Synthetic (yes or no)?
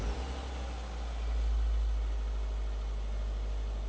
no